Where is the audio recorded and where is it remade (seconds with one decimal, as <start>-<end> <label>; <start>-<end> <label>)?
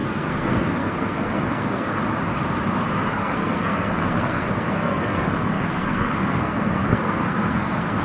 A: 0.0-2.0 remade; 2.0-3.1 recorded; 3.1-8.0 remade